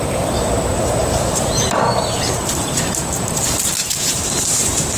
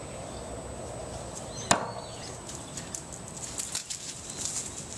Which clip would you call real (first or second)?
second